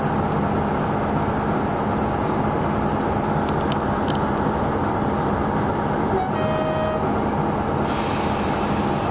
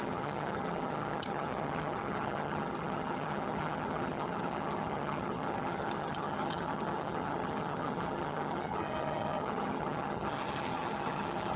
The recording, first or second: first